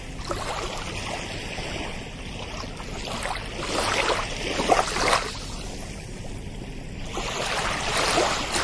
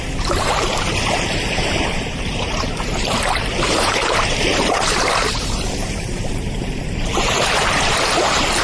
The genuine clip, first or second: first